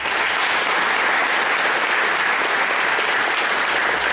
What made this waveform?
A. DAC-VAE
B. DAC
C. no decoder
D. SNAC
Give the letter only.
C